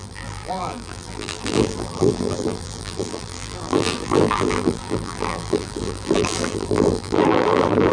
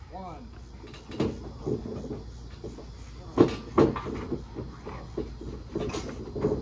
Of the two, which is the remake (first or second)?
first